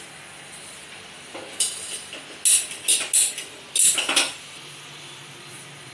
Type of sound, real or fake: real